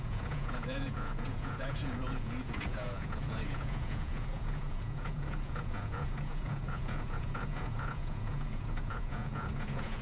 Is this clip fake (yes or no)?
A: yes